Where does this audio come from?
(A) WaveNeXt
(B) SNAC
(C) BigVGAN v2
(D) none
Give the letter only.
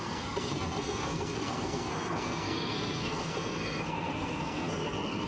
B